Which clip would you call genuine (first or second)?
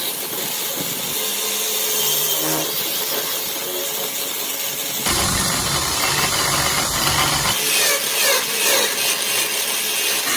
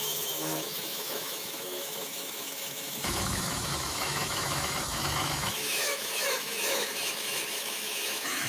first